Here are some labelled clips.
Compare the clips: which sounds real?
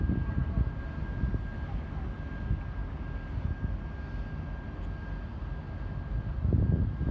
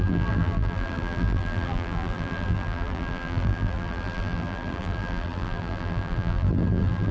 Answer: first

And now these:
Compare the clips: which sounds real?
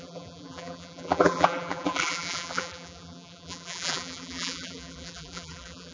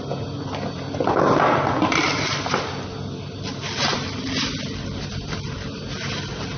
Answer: second